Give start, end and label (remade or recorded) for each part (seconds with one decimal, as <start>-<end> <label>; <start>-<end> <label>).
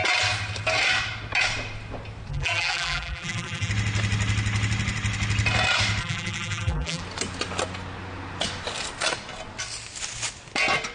0.0-2.3 recorded; 2.3-3.7 remade; 3.7-6.0 recorded; 6.0-7.0 remade; 7.0-10.9 recorded